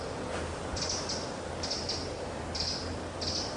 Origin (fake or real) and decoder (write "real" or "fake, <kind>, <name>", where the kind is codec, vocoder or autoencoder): real